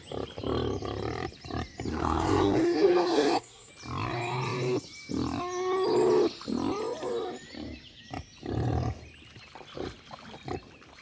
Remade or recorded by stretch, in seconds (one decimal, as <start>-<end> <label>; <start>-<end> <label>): 0.0-1.9 recorded; 1.9-3.7 remade; 3.7-11.0 recorded